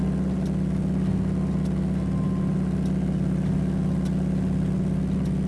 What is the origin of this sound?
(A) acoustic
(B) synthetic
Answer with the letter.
A